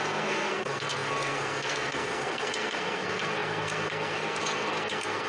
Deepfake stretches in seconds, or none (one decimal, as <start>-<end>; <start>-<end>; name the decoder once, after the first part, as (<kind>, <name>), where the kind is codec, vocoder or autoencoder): 0.0-5.3 (codec, SNAC)